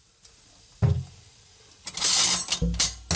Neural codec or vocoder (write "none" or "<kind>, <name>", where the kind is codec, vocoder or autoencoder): none